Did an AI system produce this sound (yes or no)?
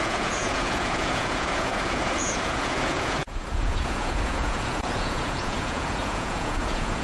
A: yes